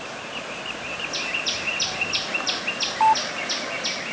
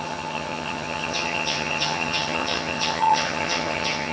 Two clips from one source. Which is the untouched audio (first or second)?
first